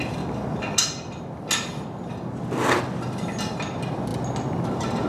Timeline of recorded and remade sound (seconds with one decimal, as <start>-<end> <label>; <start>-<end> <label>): 0.0-5.1 recorded

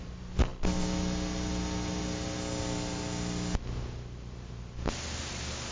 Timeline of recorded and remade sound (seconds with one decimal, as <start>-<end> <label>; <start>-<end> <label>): 0.0-5.7 recorded

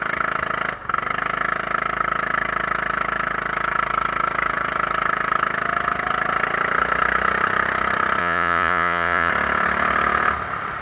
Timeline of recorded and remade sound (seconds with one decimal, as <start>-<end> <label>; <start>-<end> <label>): 0.0-8.2 recorded; 8.2-9.3 remade; 9.3-10.8 recorded